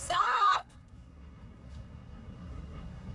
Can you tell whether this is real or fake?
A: fake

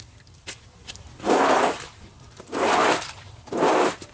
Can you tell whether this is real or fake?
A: real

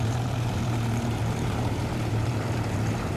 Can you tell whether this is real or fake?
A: fake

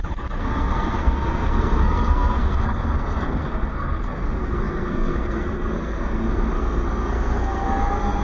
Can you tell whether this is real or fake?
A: fake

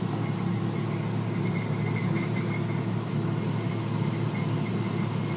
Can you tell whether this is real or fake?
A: real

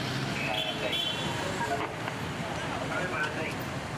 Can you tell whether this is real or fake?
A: real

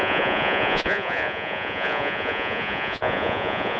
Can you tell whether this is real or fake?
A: fake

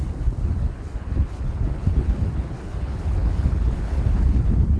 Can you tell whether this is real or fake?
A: fake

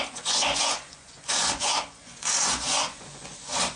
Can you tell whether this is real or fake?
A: fake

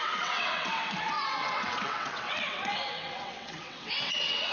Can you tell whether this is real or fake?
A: fake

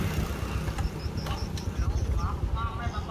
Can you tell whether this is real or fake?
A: real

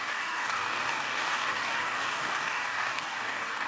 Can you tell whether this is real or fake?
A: fake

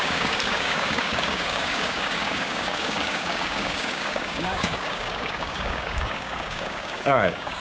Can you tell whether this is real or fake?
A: fake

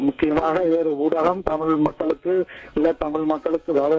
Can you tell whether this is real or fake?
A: fake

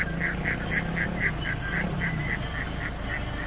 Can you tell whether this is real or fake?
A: real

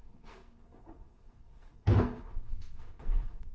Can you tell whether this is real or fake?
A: fake